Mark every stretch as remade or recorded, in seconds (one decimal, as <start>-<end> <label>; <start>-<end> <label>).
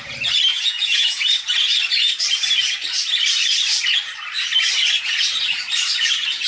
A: 0.0-0.5 recorded; 0.5-1.2 remade; 1.2-6.5 recorded